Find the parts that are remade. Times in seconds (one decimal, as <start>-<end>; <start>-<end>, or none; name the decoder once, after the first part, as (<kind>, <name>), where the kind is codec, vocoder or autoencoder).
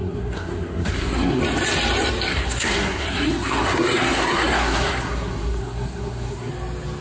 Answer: 0.0-1.4 (codec, SNAC); 2.3-6.5